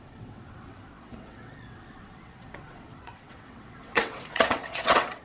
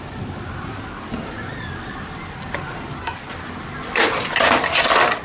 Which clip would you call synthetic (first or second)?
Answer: first